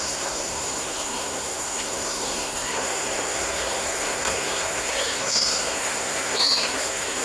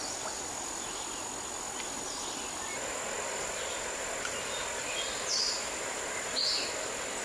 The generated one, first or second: first